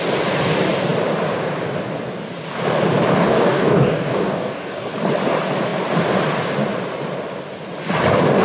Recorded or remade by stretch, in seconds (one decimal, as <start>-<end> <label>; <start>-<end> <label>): 0.0-3.1 recorded; 3.1-4.9 remade; 4.9-8.4 recorded

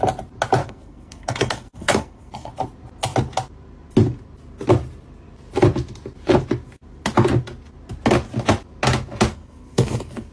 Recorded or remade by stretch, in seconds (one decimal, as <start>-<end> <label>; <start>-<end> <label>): 0.0-0.6 recorded; 0.6-2.5 remade; 2.5-9.3 recorded; 9.3-10.3 remade

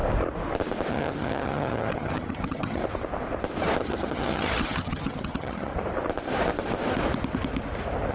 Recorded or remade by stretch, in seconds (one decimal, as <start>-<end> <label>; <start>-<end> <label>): 0.0-0.9 recorded; 0.9-2.8 remade; 2.8-3.8 recorded; 3.8-5.7 remade; 5.7-8.1 recorded